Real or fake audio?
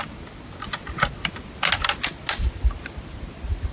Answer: real